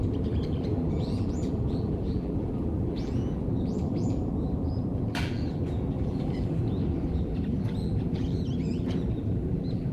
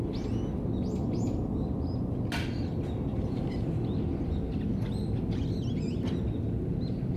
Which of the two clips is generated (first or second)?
first